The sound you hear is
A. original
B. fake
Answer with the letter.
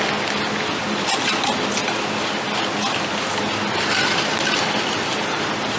A